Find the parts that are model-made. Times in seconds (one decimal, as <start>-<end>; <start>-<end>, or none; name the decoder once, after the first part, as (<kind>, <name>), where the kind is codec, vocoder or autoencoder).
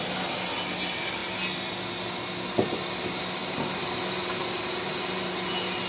0.0-1.2 (vocoder, BigVGAN v2); 2.9-3.4; 5.5-5.9